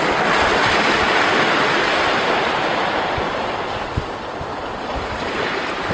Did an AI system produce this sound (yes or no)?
yes